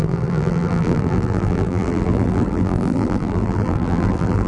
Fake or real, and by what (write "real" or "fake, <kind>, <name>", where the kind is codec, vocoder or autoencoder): fake, vocoder, BigVGAN v2